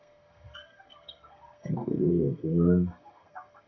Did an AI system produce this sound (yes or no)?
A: yes